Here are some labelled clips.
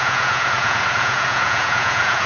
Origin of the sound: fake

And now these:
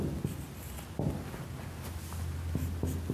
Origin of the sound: real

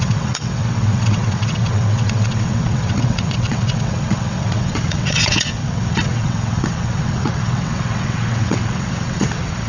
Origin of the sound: fake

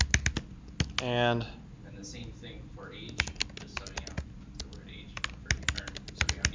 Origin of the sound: real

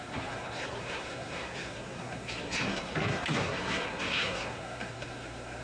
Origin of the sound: fake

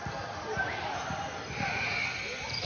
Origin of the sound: real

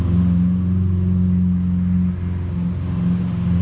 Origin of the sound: real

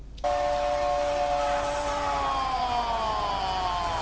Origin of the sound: real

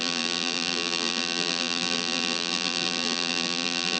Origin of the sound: fake